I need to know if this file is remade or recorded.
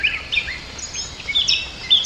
recorded